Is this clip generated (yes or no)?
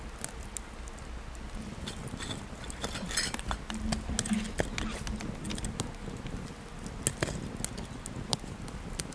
no